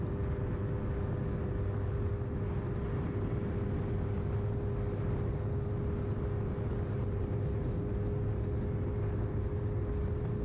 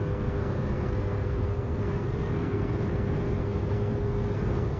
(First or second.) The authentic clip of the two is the first